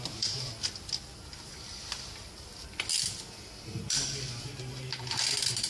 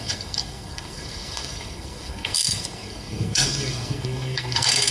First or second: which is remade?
second